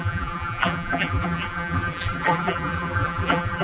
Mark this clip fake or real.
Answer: fake